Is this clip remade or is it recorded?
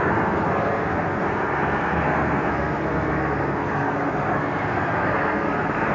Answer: remade